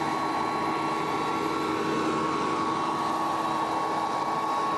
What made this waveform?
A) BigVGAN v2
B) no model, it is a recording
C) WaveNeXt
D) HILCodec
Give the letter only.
B